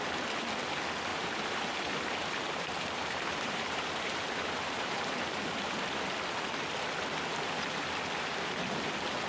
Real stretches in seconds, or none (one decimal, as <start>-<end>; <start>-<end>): 0.0-1.1; 5.4-9.3